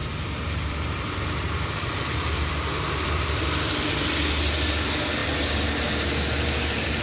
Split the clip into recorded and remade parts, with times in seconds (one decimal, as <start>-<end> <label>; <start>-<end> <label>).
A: 0.0-3.8 remade; 3.8-7.0 recorded